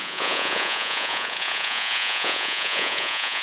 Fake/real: fake